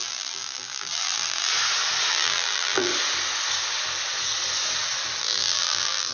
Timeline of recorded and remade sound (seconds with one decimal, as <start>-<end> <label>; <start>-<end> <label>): 0.0-1.5 remade; 1.5-2.1 recorded; 2.1-2.9 remade; 2.9-5.2 recorded; 5.2-6.1 remade